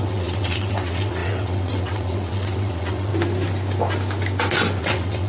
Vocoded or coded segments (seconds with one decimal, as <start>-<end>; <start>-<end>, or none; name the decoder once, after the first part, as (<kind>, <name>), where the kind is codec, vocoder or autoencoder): 0.0-3.1 (vocoder, WaveNeXt); 4.8-5.3